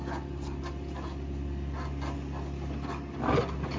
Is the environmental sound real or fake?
real